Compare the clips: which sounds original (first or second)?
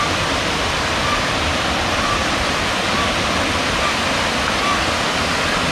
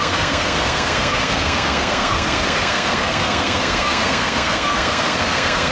first